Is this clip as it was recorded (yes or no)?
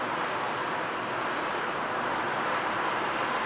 yes